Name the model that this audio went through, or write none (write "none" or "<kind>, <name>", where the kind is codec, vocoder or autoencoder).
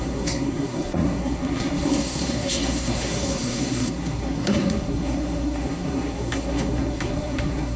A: codec, SNAC